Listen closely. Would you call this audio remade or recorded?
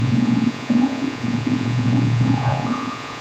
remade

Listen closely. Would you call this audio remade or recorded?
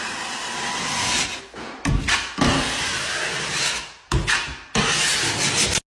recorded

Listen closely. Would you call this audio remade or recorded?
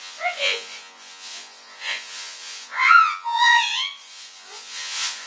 remade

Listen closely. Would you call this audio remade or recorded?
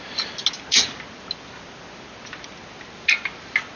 recorded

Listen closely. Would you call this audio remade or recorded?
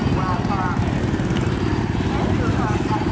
recorded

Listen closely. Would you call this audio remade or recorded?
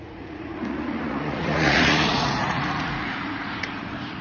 remade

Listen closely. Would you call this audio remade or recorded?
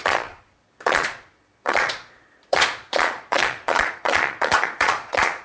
remade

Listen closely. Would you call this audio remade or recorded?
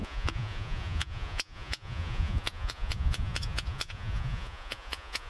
remade